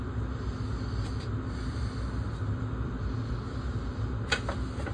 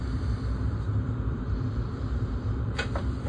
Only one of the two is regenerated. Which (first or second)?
second